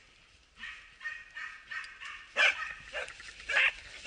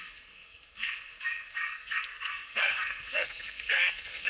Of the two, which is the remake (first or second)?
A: second